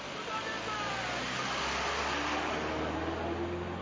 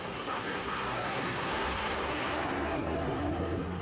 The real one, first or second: first